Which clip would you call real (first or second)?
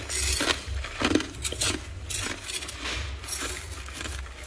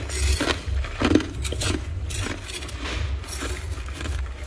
first